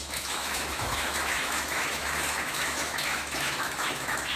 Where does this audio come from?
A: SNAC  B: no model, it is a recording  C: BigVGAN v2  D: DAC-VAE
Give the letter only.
D